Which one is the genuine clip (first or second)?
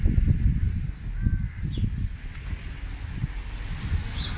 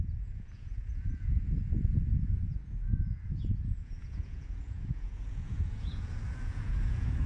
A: first